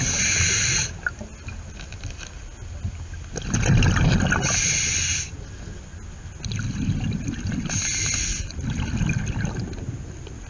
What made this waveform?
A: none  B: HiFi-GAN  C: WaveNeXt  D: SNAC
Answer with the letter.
A